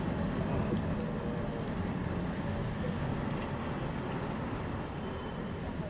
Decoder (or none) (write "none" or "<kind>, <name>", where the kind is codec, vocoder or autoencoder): none